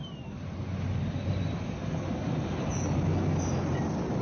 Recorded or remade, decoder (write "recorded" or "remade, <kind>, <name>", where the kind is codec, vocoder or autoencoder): recorded